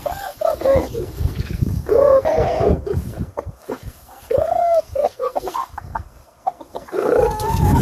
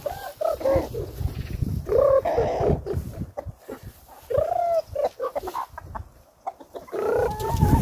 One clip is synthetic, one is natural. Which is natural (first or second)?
second